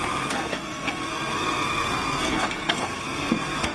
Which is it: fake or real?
fake